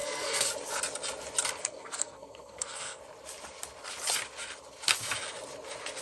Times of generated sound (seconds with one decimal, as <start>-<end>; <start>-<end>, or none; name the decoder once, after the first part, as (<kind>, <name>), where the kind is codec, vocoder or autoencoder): 0.0-0.5 (codec, SNAC); 1.6-3.0